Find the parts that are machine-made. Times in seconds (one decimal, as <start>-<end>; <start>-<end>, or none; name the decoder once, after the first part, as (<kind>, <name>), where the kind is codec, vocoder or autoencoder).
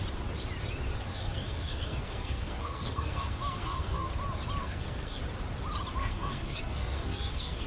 1.1-4.1 (codec, SNAC); 4.6-5.2; 6.0-7.7